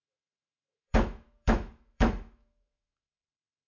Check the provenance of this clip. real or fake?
fake